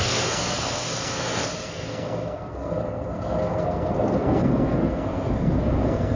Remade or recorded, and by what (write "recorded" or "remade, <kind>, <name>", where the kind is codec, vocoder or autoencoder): remade, codec, SNAC